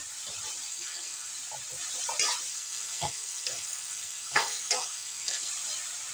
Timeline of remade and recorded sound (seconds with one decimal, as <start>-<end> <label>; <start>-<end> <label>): 0.0-0.7 recorded; 0.7-1.3 remade; 1.3-2.5 recorded; 2.5-5.5 remade; 5.5-6.1 recorded